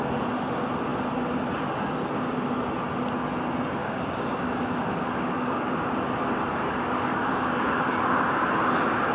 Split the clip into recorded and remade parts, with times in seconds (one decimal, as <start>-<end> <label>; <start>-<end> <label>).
0.0-3.8 recorded; 3.8-5.8 remade; 5.8-7.1 recorded; 7.1-8.0 remade; 8.0-9.1 recorded